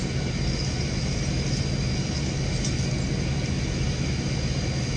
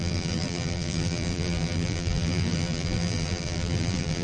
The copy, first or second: second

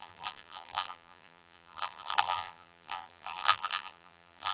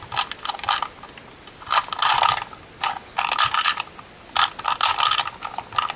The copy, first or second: first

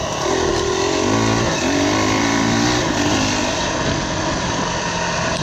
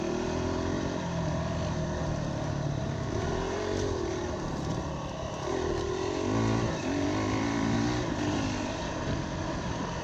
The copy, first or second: second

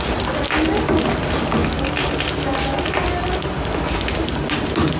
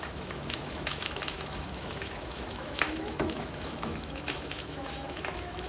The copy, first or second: second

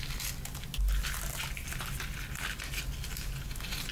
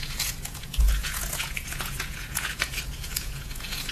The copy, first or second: second